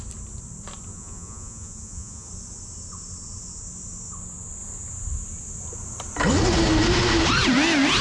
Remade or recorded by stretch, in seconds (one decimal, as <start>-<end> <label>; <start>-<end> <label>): 0.0-0.9 recorded; 0.9-2.3 remade; 2.3-8.0 recorded